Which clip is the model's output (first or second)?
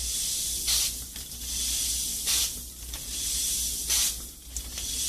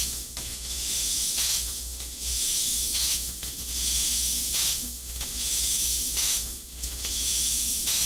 second